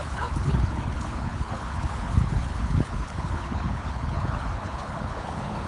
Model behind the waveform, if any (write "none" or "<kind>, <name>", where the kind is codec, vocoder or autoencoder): codec, HILCodec